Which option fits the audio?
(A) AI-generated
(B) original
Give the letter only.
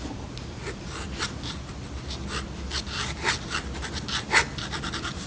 B